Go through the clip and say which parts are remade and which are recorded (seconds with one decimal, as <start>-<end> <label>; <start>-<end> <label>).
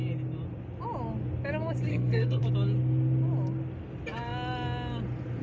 0.0-1.9 recorded; 1.9-2.4 remade; 2.4-5.4 recorded